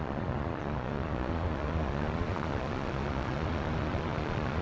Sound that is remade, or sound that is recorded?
remade